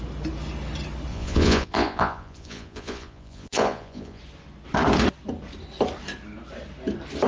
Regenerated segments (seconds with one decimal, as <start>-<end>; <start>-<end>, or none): 1.1-4.2